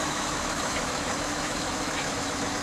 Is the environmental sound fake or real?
fake